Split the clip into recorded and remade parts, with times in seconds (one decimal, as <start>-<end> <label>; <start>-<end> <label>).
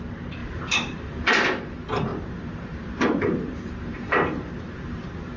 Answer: 0.0-5.4 remade